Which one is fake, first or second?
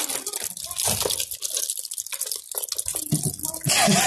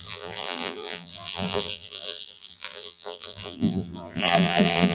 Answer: second